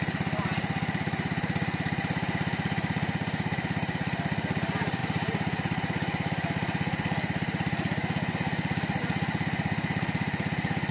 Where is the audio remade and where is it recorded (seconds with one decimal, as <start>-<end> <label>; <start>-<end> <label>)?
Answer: 0.0-10.9 remade